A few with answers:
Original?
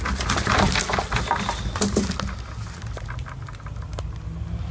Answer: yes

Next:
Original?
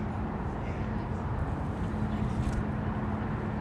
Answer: yes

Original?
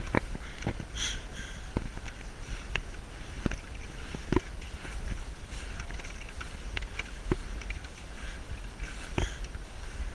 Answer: yes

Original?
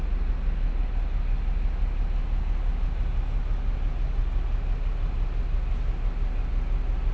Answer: yes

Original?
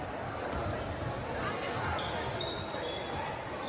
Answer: yes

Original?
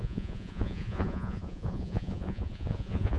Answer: no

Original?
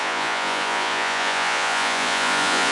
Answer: no